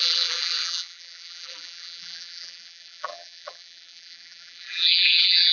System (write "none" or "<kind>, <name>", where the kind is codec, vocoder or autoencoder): vocoder, BigVGAN v2